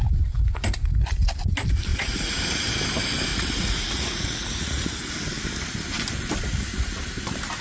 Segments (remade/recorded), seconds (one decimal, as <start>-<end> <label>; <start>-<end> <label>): 0.0-1.9 recorded; 1.9-2.4 remade; 2.4-3.3 recorded; 3.3-5.1 remade; 5.1-7.6 recorded